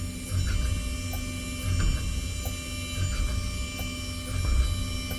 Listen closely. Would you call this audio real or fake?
real